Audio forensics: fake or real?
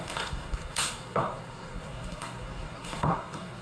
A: fake